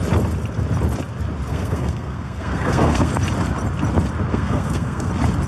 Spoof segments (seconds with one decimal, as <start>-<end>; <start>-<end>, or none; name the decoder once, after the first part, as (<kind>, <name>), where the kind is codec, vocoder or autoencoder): 1.5-3.1 (codec, SNAC); 4.3-5.1